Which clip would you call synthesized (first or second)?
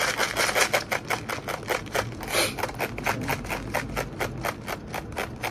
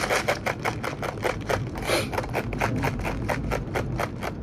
second